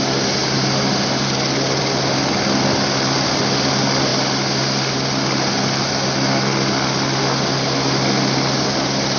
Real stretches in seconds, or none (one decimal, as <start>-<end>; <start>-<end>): 0.0-9.2